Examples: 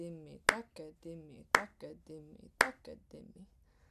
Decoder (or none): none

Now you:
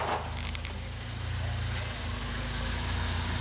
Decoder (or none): none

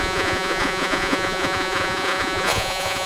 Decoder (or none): vocoder, Vocos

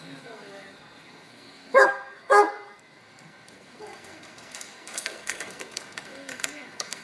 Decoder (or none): codec, SNAC